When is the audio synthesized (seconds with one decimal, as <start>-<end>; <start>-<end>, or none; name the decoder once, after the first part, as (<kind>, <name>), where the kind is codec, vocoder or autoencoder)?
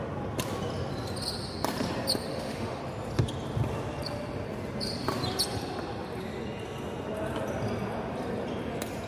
2.3-2.8 (autoencoder, DAC-VAE)